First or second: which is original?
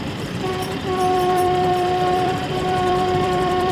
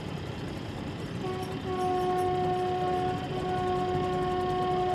second